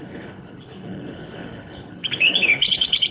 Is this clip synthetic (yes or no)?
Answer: yes